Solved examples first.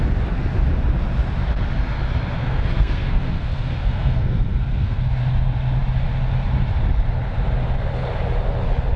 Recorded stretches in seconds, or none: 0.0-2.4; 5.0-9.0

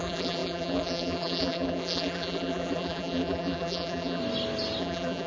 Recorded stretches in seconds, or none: 4.2-4.8

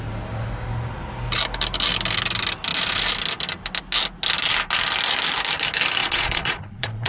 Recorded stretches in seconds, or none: 0.0-6.0

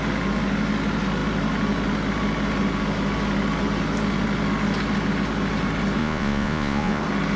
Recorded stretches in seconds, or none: 0.0-6.0; 7.0-7.4